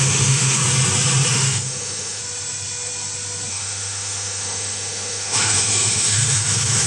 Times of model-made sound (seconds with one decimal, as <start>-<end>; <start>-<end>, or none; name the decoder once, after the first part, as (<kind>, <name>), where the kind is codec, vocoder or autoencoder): 0.0-0.6 (autoencoder, DAC-VAE); 1.3-2.2; 3.5-6.9